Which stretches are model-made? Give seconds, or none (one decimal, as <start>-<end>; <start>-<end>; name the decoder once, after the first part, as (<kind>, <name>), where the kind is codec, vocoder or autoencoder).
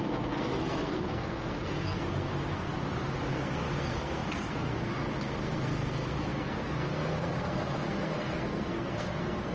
0.0-2.7 (codec, SNAC); 3.3-9.5